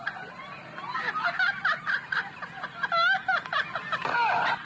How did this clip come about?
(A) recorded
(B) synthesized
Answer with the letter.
A